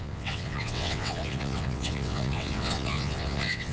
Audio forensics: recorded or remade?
remade